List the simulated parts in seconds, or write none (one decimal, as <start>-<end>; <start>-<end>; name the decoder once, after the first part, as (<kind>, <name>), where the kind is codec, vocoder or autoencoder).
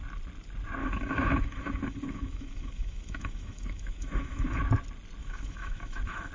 0.8-4.6 (autoencoder, DAC-VAE); 5.2-6.3